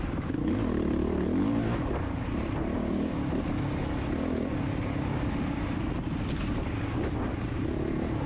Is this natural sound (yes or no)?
yes